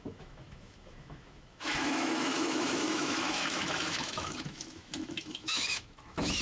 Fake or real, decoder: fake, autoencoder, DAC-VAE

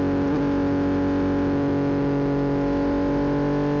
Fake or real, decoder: real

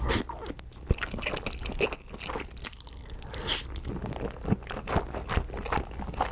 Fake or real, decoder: real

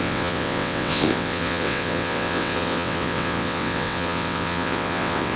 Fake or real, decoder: fake, vocoder, WaveNeXt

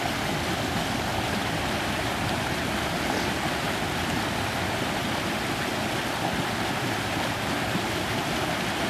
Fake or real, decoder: real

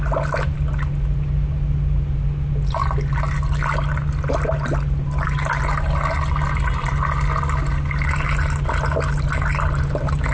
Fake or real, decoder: real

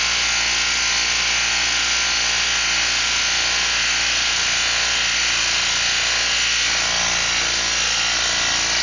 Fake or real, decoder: real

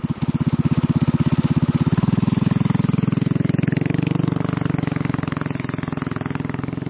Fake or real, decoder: real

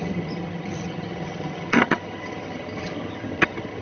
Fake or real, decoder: fake, vocoder, HiFi-GAN